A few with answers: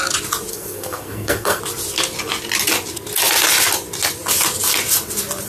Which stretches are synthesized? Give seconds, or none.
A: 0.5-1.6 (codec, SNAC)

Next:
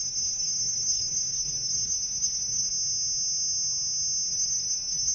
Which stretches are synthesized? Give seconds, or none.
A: 0.0-2.7 (codec, SNAC); 4.3-5.1

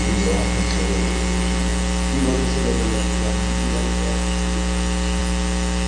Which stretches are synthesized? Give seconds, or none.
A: none

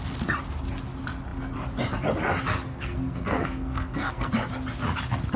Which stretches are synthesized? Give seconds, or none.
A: 2.7-4.3 (codec, SNAC)

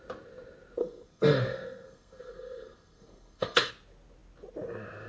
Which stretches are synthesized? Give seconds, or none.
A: 0.8-3.7 (codec, SNAC)